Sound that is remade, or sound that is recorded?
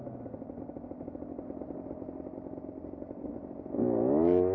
recorded